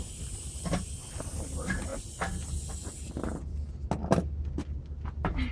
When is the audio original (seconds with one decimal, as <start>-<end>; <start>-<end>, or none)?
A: 0.0-5.5